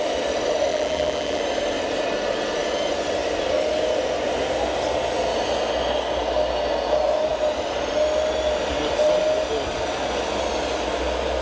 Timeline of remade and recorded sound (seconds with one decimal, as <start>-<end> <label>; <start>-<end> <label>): 0.0-0.7 recorded; 0.7-1.4 remade; 1.4-11.4 recorded